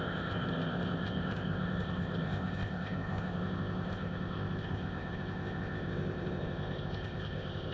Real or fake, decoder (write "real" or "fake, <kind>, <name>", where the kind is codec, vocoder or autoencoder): fake, codec, ZipCodec